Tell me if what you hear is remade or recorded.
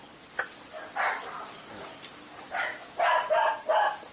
recorded